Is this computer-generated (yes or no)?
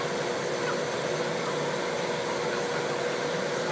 no